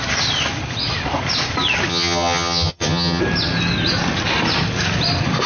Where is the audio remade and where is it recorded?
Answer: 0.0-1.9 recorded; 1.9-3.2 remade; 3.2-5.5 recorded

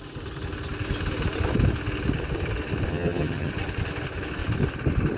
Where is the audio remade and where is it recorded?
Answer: 0.0-2.9 recorded; 2.9-3.5 remade; 3.5-5.2 recorded

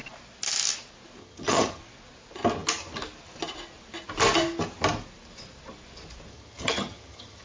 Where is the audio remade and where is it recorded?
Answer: 0.0-1.2 recorded; 1.2-1.8 remade; 1.8-6.3 recorded; 6.3-7.4 remade

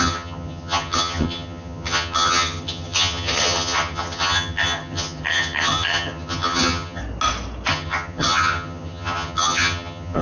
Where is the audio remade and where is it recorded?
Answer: 0.0-7.0 remade; 7.0-7.7 recorded; 7.7-10.2 remade

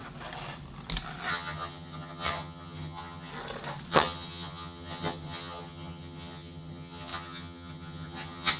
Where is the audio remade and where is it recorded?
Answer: 0.0-1.3 recorded; 1.3-3.3 remade; 3.3-3.9 recorded; 3.9-8.6 remade

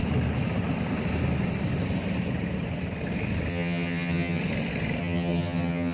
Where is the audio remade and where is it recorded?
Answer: 0.0-3.5 recorded; 3.5-4.4 remade; 4.4-5.0 recorded; 5.0-5.9 remade

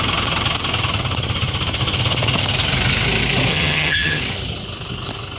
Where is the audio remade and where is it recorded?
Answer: 0.0-3.5 recorded; 3.5-4.2 remade; 4.2-5.4 recorded